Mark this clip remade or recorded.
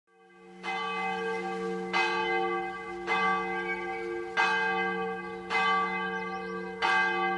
recorded